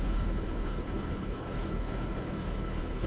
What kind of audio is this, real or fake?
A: fake